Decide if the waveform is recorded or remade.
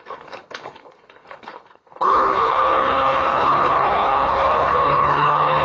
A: remade